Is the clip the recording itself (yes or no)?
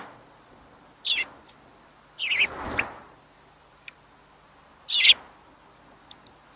yes